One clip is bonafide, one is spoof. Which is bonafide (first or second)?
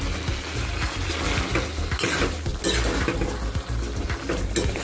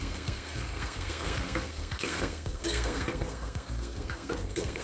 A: first